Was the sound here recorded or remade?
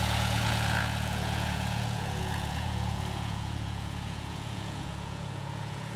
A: remade